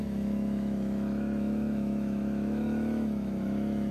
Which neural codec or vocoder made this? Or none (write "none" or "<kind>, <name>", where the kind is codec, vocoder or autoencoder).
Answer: autoencoder, DAC-VAE